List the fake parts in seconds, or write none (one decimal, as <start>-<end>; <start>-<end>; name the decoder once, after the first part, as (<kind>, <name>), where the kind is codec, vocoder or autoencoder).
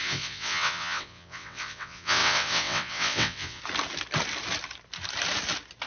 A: 0.0-3.6 (vocoder, WaveNeXt)